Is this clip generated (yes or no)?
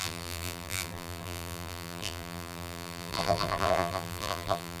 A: yes